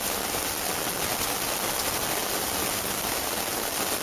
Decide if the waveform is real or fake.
real